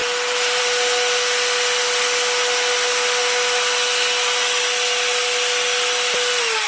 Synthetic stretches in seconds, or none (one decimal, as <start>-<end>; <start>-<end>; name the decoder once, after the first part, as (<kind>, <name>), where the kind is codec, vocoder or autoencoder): 0.0-0.6 (vocoder, BigVGAN v2)